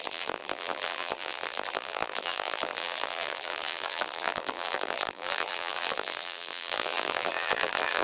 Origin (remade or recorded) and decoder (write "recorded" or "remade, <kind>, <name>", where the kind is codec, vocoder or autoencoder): remade, vocoder, BigVGAN v2